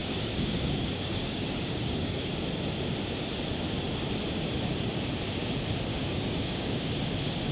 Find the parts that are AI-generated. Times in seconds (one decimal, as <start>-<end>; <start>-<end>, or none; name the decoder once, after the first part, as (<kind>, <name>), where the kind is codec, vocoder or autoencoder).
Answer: 0.0-2.3 (codec, DAC); 5.9-6.9